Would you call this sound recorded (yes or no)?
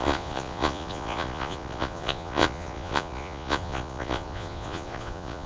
no